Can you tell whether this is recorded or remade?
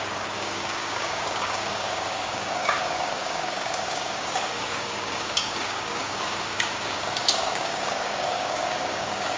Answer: remade